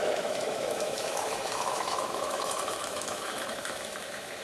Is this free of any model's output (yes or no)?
no